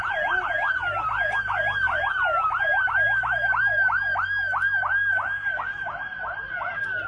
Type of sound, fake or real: real